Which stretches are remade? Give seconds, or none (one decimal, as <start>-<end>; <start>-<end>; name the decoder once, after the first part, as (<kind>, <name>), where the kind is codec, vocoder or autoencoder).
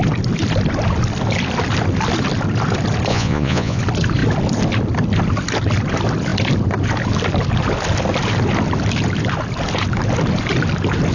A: 3.1-3.8 (vocoder, Vocos)